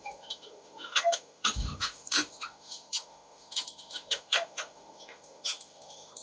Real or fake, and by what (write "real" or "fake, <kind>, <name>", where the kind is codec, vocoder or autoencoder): fake, autoencoder, DAC-VAE